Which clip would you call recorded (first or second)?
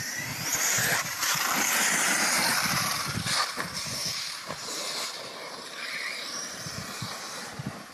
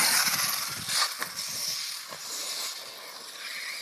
second